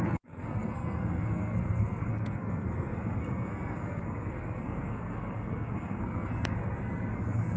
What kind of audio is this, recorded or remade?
remade